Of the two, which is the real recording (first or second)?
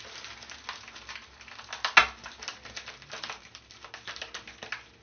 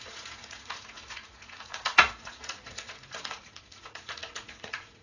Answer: first